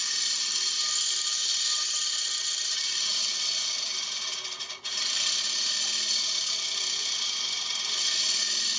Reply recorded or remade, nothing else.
recorded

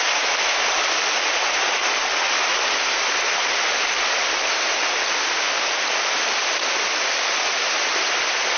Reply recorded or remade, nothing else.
recorded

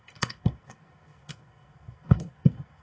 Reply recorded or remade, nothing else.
remade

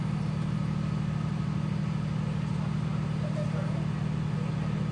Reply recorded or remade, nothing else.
recorded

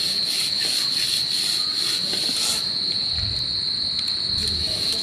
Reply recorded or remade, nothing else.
recorded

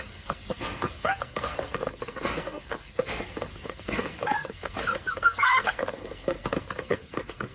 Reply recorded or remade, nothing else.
remade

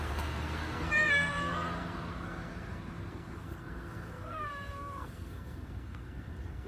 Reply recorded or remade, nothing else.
remade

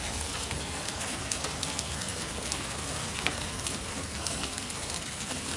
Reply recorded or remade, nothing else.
remade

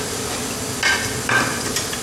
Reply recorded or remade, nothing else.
recorded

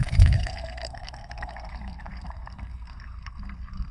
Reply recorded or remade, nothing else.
remade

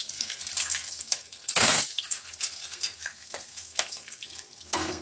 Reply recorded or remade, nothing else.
remade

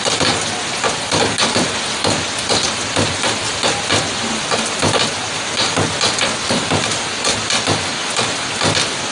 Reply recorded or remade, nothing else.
recorded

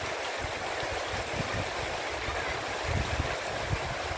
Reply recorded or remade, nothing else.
recorded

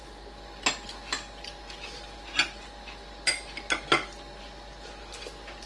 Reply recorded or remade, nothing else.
recorded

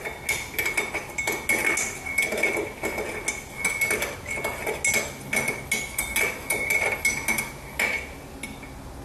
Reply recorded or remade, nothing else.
recorded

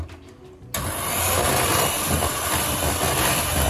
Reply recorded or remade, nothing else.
recorded